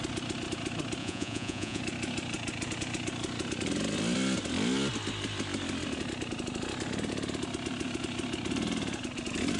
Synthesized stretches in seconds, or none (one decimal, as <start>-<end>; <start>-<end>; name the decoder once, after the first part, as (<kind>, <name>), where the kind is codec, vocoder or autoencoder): 1.0-1.8 (vocoder, Vocos)

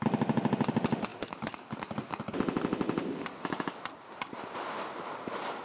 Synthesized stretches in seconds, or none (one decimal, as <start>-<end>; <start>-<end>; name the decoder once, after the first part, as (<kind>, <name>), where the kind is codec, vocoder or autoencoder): none

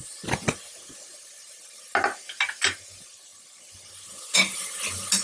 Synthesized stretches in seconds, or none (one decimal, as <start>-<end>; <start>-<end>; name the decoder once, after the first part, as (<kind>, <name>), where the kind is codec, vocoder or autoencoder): none

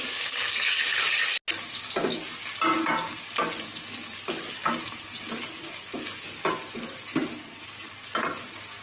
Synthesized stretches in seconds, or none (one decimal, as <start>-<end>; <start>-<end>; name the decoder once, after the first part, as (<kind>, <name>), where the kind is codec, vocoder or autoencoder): none

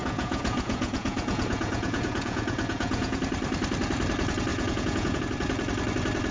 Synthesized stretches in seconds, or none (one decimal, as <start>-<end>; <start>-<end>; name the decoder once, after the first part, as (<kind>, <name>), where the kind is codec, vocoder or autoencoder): 0.0-3.2 (vocoder, Vocos); 4.5-5.2